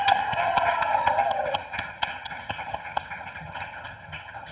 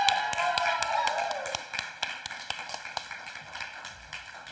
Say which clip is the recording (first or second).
second